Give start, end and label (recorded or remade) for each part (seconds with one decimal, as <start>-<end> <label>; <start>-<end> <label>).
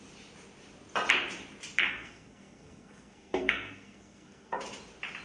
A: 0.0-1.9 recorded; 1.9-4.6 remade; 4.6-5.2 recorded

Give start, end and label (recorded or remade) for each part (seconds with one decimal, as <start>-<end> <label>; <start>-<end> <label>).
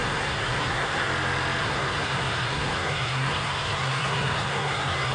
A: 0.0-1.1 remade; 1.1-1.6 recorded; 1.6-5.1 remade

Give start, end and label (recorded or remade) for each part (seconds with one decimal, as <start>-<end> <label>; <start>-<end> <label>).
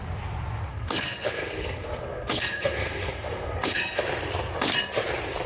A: 0.0-0.7 recorded; 0.7-4.0 remade; 4.0-5.5 recorded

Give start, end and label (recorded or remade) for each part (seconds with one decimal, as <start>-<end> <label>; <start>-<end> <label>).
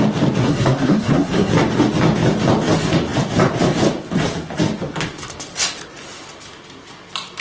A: 0.0-0.4 recorded; 0.4-1.5 remade; 1.5-7.4 recorded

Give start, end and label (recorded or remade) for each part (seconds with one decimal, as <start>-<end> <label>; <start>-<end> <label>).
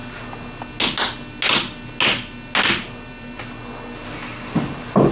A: 0.0-5.1 recorded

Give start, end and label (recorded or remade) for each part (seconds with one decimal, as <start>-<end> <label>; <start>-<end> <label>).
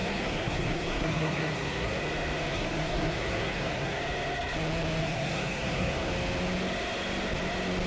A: 0.0-2.0 remade; 2.0-2.5 recorded; 2.5-4.0 remade; 4.0-5.0 recorded; 5.0-6.1 remade; 6.1-7.9 recorded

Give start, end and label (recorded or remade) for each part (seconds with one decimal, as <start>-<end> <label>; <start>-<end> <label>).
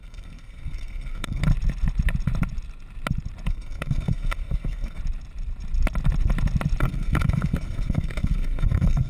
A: 0.0-1.4 remade; 1.4-3.5 recorded; 3.5-5.0 remade; 5.0-6.8 recorded; 6.8-9.1 remade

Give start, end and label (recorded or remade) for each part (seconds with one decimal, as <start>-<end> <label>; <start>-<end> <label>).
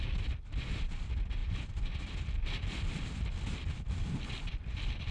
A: 0.0-5.1 recorded